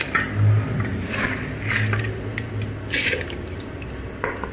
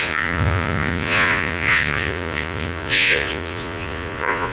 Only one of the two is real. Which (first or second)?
first